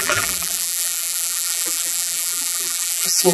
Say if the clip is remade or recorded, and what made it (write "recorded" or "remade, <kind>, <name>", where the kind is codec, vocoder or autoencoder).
remade, vocoder, BigVGAN v2